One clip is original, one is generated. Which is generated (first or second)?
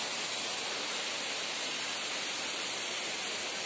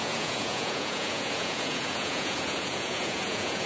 second